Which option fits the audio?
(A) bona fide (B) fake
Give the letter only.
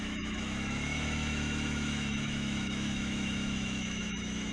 B